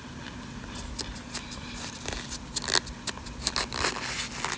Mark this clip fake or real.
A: real